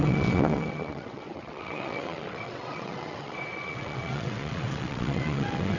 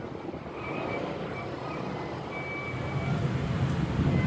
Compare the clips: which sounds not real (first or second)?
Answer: first